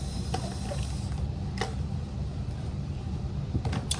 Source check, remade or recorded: recorded